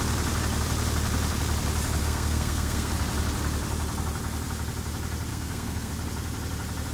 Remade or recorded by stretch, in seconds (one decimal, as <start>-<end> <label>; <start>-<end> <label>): 0.0-2.0 recorded; 2.0-2.9 remade; 2.9-5.3 recorded; 5.3-5.9 remade; 5.9-6.9 recorded